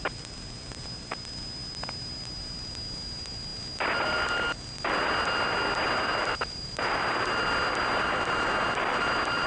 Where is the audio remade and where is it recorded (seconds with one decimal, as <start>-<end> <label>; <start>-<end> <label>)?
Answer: 0.0-6.3 recorded; 6.3-7.0 remade; 7.0-9.5 recorded